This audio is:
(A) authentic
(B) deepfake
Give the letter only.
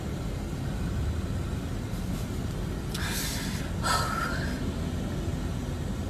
A